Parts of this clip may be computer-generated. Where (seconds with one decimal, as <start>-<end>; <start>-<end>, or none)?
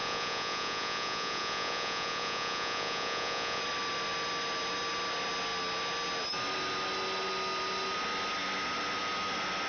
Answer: 0.0-3.6